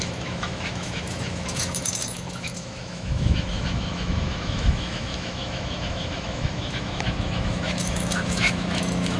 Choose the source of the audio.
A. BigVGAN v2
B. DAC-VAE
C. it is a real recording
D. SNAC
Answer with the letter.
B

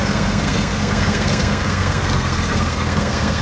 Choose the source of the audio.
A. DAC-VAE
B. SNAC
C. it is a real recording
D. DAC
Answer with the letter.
B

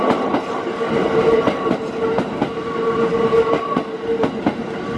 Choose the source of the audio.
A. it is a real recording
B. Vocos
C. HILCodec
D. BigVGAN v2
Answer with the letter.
A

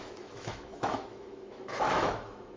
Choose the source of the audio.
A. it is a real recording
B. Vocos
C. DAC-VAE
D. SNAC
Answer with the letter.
C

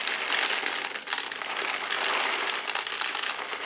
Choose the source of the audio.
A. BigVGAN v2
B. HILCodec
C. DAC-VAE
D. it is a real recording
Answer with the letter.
D